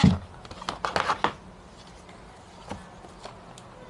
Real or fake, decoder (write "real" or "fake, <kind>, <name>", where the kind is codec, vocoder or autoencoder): real